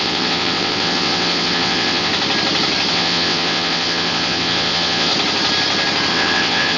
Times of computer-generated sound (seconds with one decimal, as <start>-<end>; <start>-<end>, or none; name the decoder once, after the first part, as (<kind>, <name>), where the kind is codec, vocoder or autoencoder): 0.0-2.1 (vocoder, WaveNeXt); 2.9-5.1; 6.1-6.8